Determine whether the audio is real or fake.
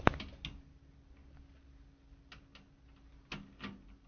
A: real